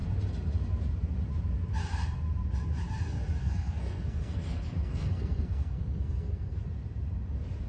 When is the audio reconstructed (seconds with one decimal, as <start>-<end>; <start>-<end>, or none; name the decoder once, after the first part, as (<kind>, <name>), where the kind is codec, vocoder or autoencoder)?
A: 3.4-6.6 (codec, SNAC)